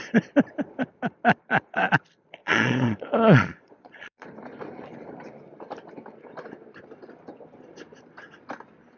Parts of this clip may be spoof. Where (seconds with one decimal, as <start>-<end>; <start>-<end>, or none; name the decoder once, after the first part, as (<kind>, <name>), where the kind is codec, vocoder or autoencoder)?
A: 2.4-4.3 (vocoder, Vocos)

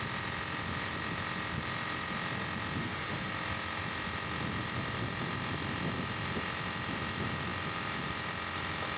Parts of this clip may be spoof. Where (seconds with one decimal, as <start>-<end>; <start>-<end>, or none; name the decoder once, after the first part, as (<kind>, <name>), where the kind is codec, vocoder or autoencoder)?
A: 2.8-3.3 (autoencoder, DAC-VAE)

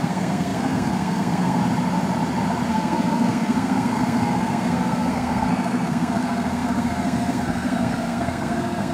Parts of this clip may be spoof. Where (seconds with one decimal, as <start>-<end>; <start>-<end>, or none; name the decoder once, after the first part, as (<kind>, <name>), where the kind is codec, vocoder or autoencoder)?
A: 0.0-1.6 (codec, SNAC); 2.7-8.9

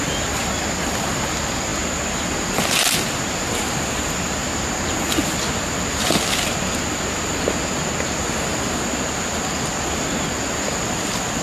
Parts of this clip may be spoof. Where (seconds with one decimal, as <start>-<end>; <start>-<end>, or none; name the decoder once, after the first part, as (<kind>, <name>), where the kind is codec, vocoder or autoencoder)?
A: none

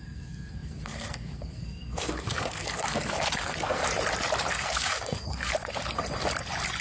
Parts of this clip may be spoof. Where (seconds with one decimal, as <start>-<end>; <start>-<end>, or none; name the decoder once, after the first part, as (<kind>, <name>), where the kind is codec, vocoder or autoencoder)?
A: 0.0-3.8 (codec, SNAC); 4.5-5.5

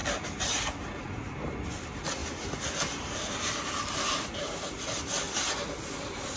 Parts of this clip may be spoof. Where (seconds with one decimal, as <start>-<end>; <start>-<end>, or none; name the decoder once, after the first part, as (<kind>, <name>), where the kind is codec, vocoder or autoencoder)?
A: 1.2-2.2 (vocoder, BigVGAN v2); 6.0-6.4

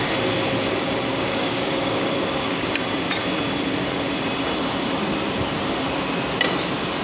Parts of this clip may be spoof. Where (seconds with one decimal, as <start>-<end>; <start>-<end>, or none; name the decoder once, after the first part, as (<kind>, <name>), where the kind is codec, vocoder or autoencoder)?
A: 1.1-2.7 (codec, DAC)

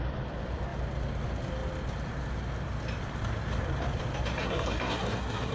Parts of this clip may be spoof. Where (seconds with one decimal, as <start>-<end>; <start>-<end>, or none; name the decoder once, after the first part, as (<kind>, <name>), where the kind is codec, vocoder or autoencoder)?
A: 4.4-5.5 (codec, SNAC)